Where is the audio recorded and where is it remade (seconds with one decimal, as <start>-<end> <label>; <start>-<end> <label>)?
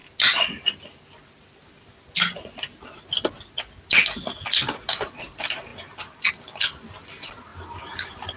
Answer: 0.0-4.9 recorded; 4.9-5.7 remade; 5.7-6.3 recorded; 6.3-7.5 remade; 7.5-8.4 recorded